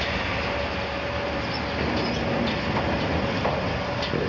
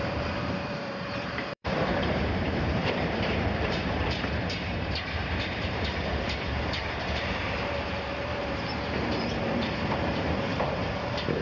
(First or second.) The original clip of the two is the first